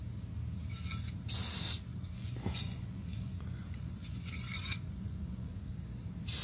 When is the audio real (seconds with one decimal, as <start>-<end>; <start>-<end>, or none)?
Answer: 0.0-1.9; 5.7-6.4